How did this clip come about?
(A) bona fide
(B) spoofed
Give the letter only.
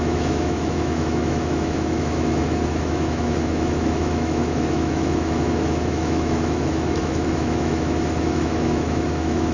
B